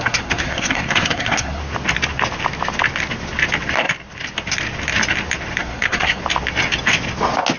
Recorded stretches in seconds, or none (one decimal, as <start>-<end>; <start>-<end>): 1.6-5.6; 6.2-7.6